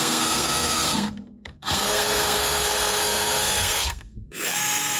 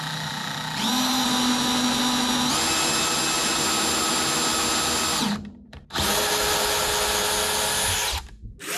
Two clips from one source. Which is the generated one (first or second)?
first